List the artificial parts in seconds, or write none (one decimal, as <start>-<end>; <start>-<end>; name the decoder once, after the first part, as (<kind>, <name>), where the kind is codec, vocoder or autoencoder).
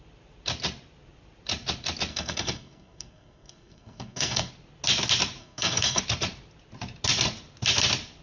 2.1-4.5 (codec, SNAC); 5.4-6.0